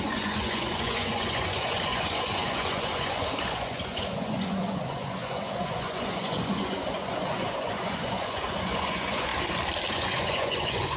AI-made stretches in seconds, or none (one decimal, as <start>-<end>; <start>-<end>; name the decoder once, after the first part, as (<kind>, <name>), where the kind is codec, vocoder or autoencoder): 0.0-9.3 (vocoder, Vocos); 9.9-11.0